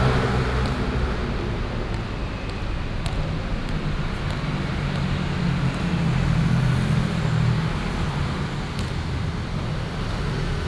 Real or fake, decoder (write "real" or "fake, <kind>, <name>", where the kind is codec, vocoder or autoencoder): real